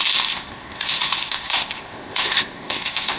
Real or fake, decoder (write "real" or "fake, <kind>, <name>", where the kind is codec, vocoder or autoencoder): fake, codec, ZipCodec